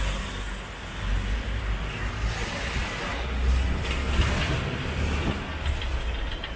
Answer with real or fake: real